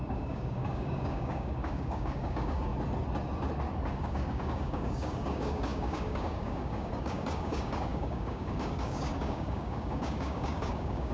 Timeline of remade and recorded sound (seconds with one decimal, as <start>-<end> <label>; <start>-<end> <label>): 0.0-2.7 remade; 2.7-4.0 recorded; 4.0-11.1 remade